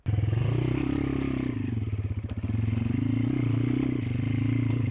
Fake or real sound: real